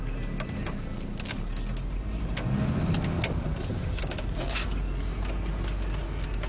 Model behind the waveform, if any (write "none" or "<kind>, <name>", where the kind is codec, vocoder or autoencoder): none